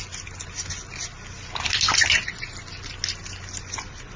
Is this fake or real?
real